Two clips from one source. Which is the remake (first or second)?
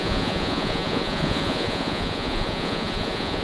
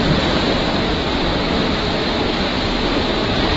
first